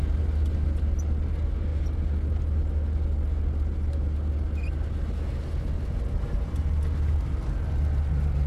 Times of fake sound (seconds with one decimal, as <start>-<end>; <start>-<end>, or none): none